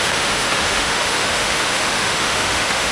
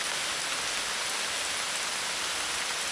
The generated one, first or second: first